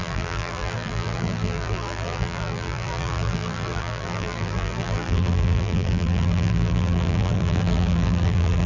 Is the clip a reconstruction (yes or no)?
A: yes